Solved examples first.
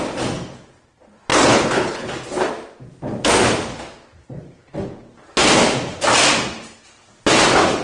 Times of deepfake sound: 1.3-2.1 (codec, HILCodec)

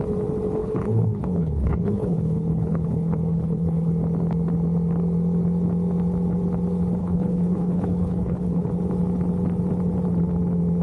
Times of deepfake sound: 0.6-3.9 (codec, HILCodec); 7.0-8.7

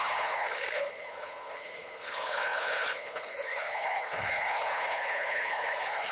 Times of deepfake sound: 0.0-6.1 (codec, HILCodec)

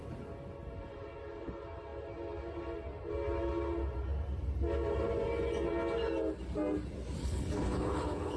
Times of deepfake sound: 7.2-8.4 (codec, HILCodec)

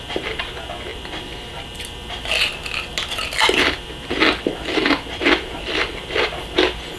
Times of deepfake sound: none

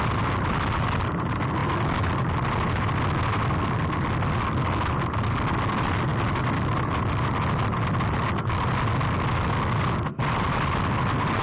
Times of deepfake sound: none

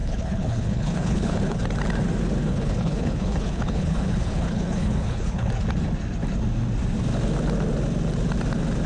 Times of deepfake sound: 0.0-1.6 (codec, HILCodec); 2.4-5.5

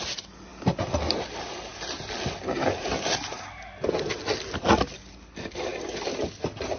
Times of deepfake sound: none